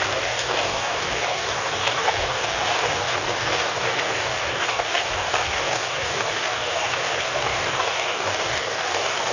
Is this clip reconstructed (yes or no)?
yes